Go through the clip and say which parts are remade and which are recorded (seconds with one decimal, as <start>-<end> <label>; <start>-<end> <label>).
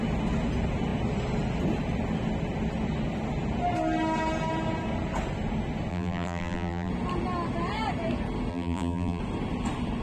0.0-5.9 recorded; 5.9-6.9 remade; 6.9-8.5 recorded; 8.5-9.2 remade; 9.2-10.0 recorded